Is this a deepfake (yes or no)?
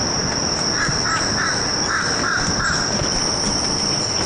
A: no